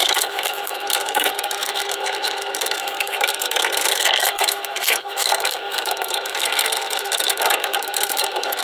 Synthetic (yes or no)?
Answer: yes